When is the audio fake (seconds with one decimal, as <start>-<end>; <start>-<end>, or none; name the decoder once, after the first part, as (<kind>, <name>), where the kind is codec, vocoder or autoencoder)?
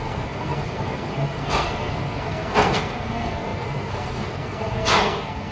0.0-5.5 (codec, SNAC)